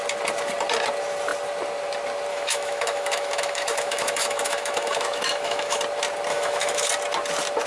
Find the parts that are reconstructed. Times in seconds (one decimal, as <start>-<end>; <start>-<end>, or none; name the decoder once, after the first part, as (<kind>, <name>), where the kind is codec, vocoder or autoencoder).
2.3-5.8 (autoencoder, DAC-VAE); 6.3-6.9